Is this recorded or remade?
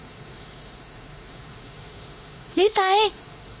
remade